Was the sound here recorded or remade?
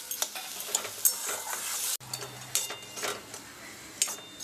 recorded